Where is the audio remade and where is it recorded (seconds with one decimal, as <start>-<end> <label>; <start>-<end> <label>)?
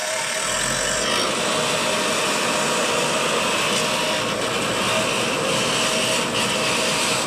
0.0-7.3 recorded